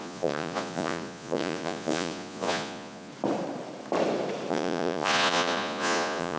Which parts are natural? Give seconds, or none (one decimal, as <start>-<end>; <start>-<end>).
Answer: 3.1-4.5